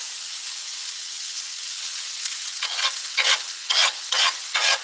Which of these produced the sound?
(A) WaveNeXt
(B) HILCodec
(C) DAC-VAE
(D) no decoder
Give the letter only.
A